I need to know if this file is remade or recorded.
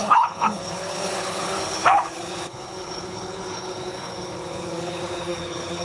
remade